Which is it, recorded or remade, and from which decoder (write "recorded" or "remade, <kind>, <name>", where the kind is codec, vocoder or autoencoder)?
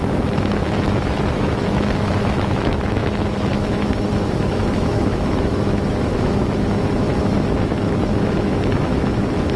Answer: remade, autoencoder, DAC-VAE